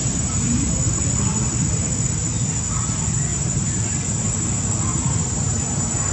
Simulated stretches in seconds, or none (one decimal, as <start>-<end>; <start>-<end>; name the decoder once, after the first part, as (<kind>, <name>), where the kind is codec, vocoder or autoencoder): 0.0-0.7 (vocoder, BigVGAN v2); 3.3-3.8; 4.9-6.1